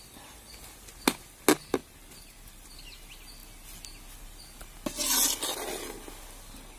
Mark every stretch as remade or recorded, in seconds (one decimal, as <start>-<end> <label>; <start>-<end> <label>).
0.0-6.8 recorded